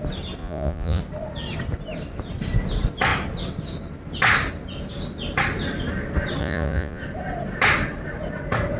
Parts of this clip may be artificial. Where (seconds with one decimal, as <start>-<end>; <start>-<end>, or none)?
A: 0.4-1.0; 6.4-7.0